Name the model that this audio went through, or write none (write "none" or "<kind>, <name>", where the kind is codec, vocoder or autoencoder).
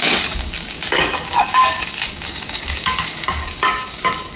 codec, DAC